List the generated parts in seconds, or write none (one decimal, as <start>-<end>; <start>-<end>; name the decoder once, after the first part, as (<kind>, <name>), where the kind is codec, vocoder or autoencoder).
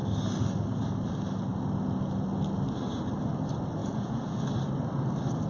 3.8-4.4 (vocoder, Vocos)